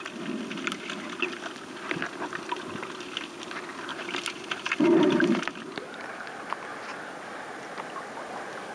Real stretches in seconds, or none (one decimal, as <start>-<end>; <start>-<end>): 0.0-3.9; 4.9-8.7